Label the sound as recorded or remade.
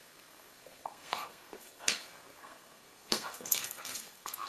remade